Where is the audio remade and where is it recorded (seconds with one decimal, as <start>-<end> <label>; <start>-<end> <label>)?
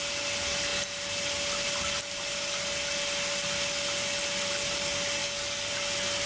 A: 0.0-5.2 recorded; 5.2-5.7 remade; 5.7-6.3 recorded